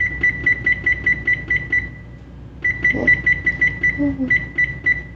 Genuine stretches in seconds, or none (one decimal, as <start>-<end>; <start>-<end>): 0.0-5.2